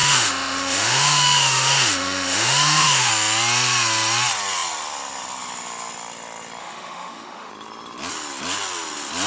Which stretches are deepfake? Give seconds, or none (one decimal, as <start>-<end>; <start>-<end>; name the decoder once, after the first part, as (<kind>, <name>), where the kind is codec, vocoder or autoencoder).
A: 0.0-3.1 (autoencoder, DAC-VAE); 6.6-7.5

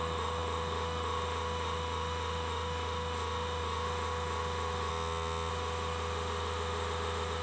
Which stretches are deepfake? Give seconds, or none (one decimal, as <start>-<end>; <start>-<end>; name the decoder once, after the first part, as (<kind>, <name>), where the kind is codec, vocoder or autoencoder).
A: 0.0-4.9 (autoencoder, DAC-VAE); 5.5-7.4